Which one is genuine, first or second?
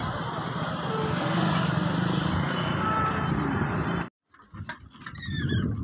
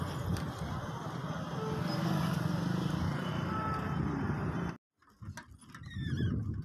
second